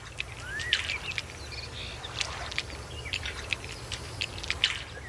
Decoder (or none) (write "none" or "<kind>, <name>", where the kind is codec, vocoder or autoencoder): none